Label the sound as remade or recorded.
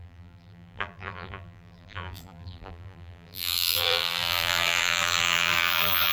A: remade